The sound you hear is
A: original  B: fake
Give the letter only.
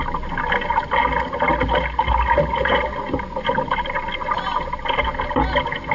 A